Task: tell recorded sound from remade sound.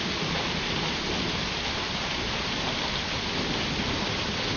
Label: recorded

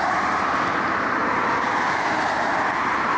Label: recorded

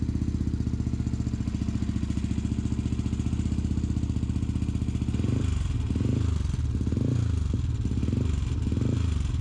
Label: recorded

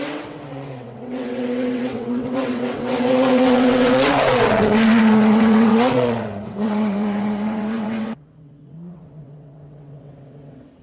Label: remade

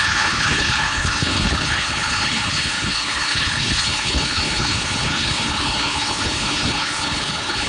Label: remade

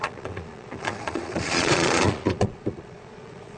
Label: remade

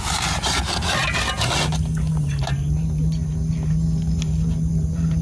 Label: recorded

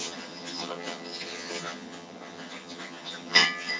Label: remade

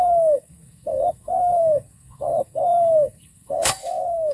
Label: remade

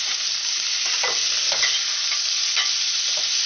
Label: recorded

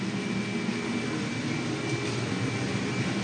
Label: recorded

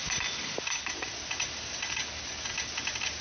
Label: recorded